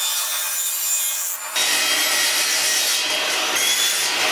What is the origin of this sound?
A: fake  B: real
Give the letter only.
B